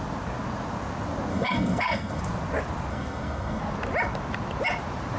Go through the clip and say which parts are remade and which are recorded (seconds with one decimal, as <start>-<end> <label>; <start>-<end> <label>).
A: 0.0-1.3 recorded; 1.3-2.2 remade; 2.2-2.9 recorded; 2.9-3.6 remade; 3.6-5.2 recorded